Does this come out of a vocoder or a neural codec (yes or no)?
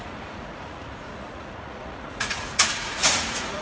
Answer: yes